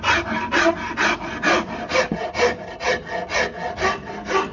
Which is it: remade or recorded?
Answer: recorded